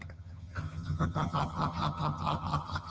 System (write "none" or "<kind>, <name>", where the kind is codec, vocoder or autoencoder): vocoder, HiFi-GAN